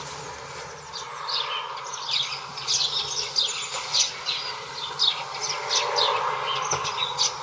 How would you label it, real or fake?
real